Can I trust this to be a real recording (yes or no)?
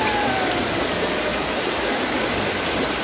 yes